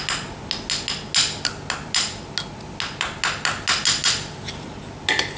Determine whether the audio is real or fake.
real